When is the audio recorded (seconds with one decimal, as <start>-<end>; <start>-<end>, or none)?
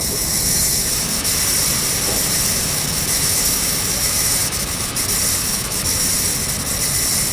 1.3-2.5; 4.9-5.4; 6.3-7.3